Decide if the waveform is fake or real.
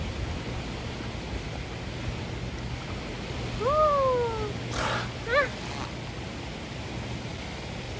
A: real